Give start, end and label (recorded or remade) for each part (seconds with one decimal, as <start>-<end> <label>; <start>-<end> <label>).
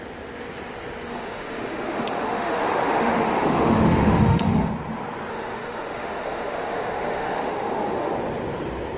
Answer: 0.0-1.1 recorded; 1.1-4.7 remade; 4.7-5.3 recorded; 5.3-8.1 remade; 8.1-9.0 recorded